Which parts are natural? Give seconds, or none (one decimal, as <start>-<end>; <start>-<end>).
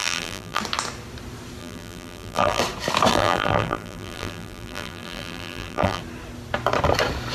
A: 0.6-1.6; 2.6-3.1; 6.0-7.3